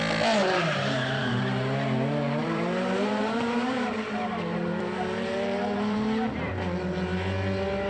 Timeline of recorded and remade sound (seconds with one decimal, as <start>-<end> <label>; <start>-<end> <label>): 0.0-0.4 recorded; 0.4-1.4 remade; 1.4-2.4 recorded; 2.4-6.5 remade; 6.5-7.9 recorded